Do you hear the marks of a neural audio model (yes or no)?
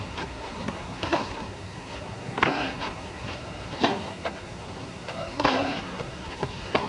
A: yes